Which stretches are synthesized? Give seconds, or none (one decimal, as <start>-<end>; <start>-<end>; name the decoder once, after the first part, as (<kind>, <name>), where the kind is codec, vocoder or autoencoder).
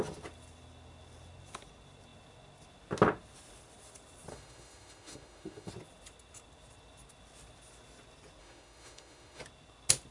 4.3-5.7 (autoencoder, DAC-VAE); 8.4-9.4